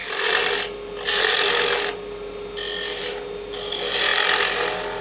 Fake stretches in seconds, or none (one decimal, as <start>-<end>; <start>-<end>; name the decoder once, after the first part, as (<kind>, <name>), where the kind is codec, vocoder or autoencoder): none